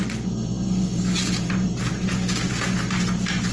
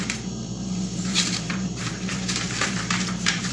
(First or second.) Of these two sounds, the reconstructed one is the second